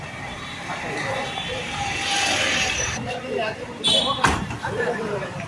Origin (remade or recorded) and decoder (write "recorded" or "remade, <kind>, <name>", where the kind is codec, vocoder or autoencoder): remade, vocoder, BigVGAN v2